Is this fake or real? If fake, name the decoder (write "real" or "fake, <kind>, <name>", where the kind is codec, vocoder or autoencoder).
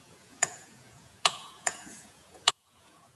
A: fake, vocoder, Vocos